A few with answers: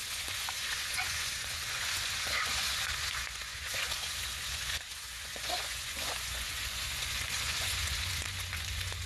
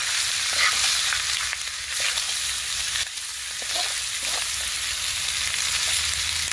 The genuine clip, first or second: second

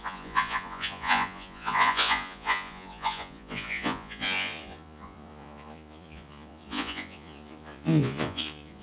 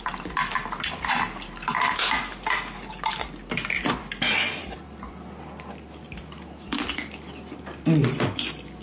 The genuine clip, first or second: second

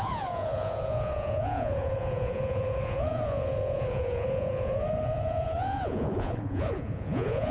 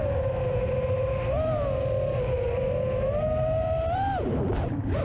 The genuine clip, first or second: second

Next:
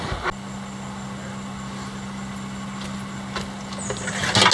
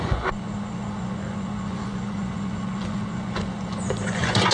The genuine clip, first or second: first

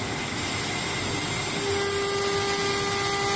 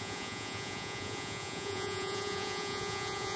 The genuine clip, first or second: first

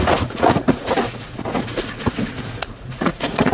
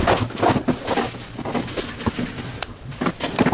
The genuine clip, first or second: second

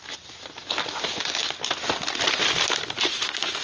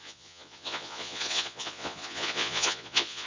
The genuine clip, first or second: first